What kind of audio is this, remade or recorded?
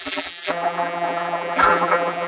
remade